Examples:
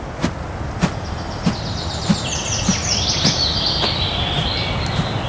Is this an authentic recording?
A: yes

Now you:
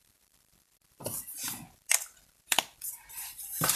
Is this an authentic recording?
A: no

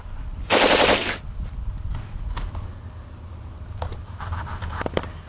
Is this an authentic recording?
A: yes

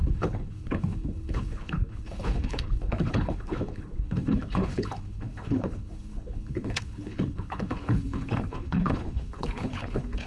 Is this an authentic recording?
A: no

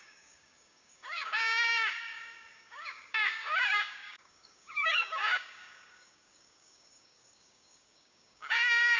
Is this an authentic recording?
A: no